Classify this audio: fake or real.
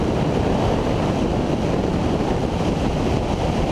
real